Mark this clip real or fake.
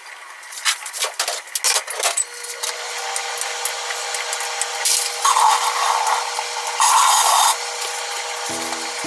real